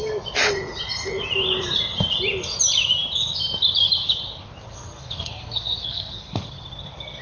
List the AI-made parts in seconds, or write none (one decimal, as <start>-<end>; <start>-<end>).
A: 4.7-6.3